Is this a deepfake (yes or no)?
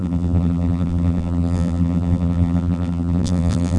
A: yes